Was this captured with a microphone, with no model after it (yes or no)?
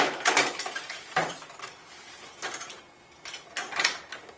yes